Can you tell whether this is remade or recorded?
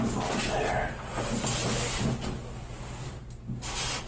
recorded